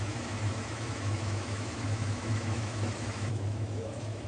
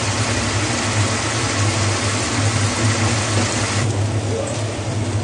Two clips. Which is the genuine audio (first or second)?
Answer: second